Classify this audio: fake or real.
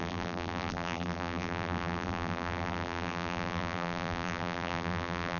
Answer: fake